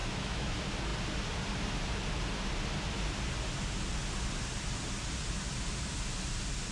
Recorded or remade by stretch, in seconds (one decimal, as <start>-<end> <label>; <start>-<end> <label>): 0.0-0.5 remade; 0.5-6.7 recorded